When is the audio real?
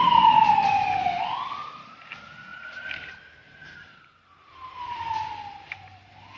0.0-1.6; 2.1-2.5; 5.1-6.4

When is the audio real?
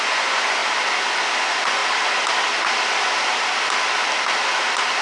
0.6-1.4; 1.8-5.0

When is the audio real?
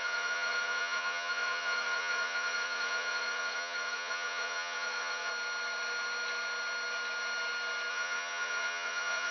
5.3-7.9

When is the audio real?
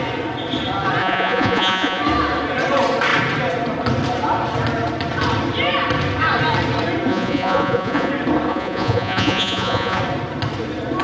0.0-1.0; 2.0-7.1; 8.1-8.5; 10.0-11.0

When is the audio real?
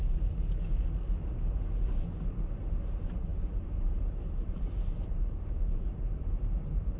0.7-2.9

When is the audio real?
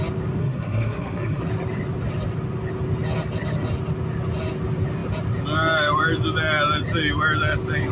0.0-0.4; 1.4-7.9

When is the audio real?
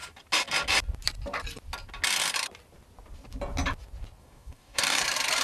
0.0-4.2; 5.0-5.4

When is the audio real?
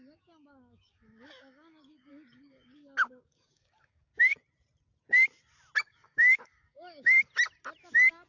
4.1-5.8; 7.2-7.9